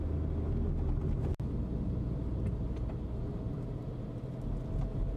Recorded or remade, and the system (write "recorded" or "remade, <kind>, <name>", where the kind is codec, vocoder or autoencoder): recorded